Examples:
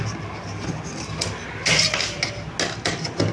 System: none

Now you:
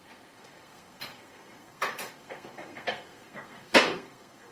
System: codec, SNAC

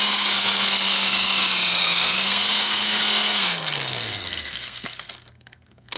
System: codec, SNAC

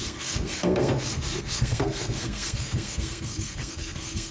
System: codec, SNAC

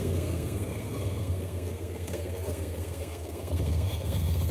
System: codec, SNAC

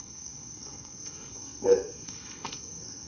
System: codec, SNAC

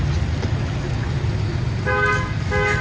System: none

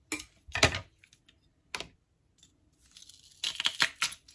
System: none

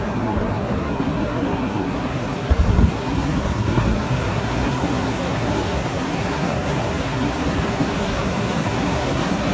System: codec, SNAC